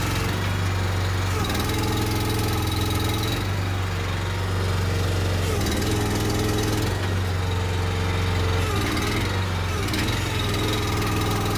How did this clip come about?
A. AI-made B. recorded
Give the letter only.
B